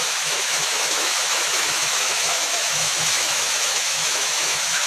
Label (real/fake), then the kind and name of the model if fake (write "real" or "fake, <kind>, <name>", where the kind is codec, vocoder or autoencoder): fake, autoencoder, DAC-VAE